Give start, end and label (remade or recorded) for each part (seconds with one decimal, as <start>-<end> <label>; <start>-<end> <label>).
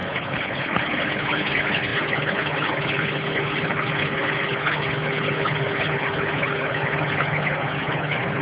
0.0-8.4 remade